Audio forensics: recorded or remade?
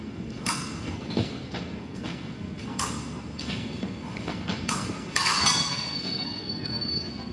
remade